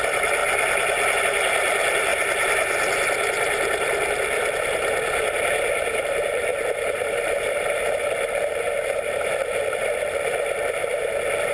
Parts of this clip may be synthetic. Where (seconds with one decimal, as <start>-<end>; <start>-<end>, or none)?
0.0-0.4; 1.2-2.1; 6.0-10.8